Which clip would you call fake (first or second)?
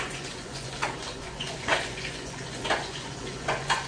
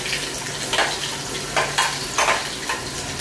first